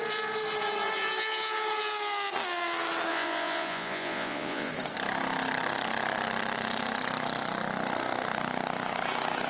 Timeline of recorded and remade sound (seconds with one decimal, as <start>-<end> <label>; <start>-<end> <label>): 0.0-3.1 recorded; 3.1-4.7 remade; 4.7-9.5 recorded